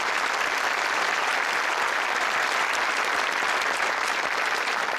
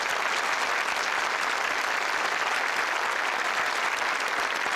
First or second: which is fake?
first